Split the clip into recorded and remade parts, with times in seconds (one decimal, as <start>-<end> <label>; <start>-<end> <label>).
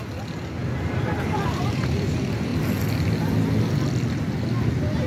0.0-5.1 recorded